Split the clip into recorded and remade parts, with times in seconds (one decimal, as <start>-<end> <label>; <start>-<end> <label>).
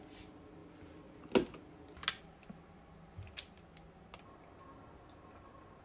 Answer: 0.0-5.8 recorded